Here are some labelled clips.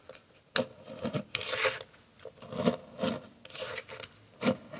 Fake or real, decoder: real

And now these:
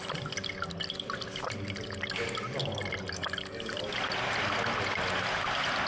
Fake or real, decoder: real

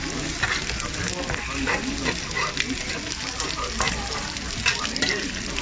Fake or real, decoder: real